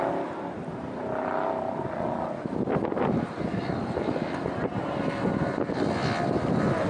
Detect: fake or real real